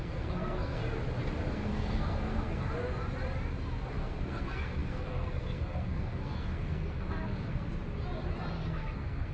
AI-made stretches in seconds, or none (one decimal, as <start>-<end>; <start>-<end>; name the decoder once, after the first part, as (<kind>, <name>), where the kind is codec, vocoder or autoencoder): 0.0-0.8 (codec, SNAC); 1.5-2.7; 3.9-7.7; 8.6-9.3